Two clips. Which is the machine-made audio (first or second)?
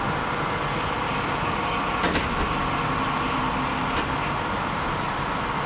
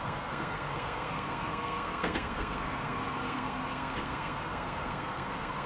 second